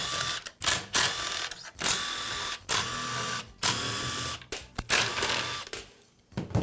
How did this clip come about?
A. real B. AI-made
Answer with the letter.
A